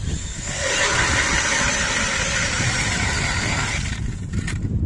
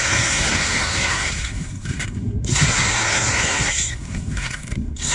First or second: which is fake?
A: second